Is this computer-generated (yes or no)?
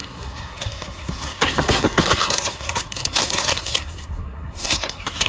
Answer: yes